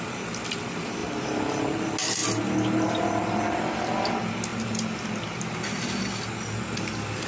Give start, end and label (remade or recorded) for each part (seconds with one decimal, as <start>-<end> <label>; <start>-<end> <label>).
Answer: 0.0-7.3 recorded